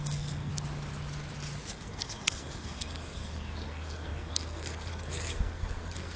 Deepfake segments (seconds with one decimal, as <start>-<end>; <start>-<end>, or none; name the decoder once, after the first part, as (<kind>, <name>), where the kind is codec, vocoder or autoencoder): 0.0-0.5 (codec, SNAC); 1.7-6.2